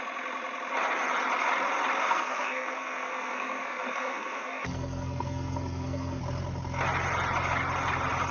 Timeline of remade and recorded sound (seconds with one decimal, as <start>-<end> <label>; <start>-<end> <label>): 0.0-2.0 recorded; 2.0-6.2 remade; 6.2-8.3 recorded